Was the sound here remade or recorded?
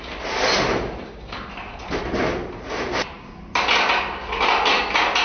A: recorded